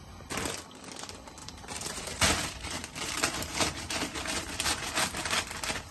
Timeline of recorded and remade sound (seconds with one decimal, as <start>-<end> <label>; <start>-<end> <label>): 0.0-1.4 recorded; 1.4-4.9 remade; 4.9-5.9 recorded